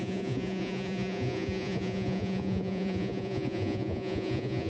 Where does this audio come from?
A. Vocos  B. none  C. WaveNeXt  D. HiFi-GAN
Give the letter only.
A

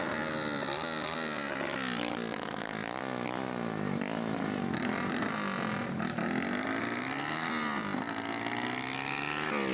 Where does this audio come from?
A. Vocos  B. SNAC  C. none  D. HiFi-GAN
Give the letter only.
C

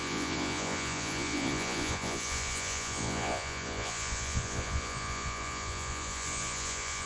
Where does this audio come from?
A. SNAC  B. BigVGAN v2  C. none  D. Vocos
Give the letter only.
D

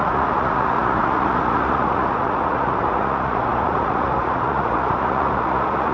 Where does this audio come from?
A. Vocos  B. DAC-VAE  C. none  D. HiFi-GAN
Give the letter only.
A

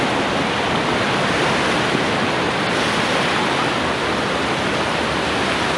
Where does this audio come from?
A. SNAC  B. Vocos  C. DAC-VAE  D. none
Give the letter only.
D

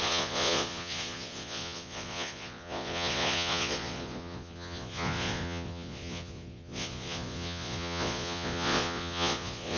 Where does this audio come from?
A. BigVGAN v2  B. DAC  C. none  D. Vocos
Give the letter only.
D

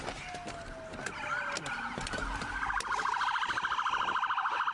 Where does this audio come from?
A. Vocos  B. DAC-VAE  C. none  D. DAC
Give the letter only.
C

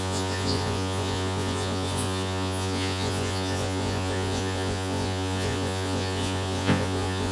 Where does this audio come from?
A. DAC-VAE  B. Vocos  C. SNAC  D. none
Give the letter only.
B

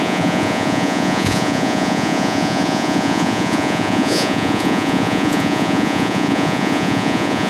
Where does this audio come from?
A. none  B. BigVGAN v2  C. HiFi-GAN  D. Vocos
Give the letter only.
D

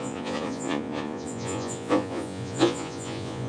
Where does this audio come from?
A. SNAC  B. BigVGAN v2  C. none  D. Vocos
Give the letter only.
D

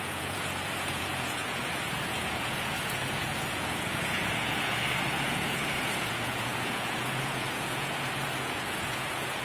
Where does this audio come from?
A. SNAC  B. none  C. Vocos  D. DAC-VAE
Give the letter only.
C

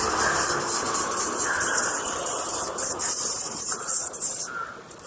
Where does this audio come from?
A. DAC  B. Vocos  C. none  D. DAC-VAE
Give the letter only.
C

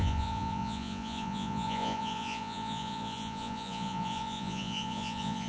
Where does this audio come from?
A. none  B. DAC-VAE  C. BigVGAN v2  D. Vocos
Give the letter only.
D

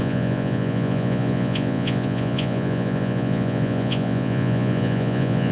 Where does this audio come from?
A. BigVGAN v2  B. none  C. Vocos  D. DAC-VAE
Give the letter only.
C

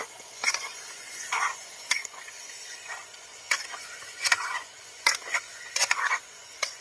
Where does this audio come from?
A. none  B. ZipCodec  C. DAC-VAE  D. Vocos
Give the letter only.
D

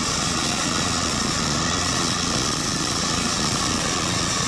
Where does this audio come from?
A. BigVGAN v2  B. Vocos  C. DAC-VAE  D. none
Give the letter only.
B